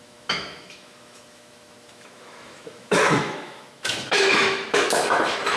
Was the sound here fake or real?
fake